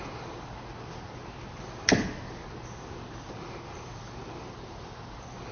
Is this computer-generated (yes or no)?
no